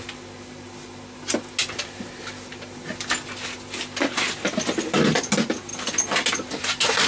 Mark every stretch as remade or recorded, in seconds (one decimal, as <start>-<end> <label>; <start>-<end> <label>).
0.0-7.1 recorded